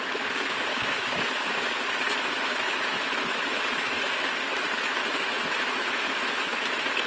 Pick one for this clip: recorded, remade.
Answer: remade